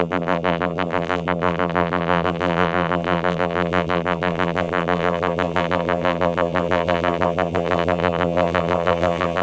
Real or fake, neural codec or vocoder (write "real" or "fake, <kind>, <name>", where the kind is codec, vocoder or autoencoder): fake, vocoder, BigVGAN v2